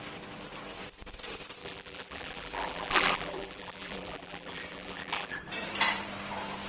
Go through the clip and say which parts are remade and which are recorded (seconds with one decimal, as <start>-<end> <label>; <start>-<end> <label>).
0.0-1.6 recorded; 1.6-5.4 remade; 5.4-6.7 recorded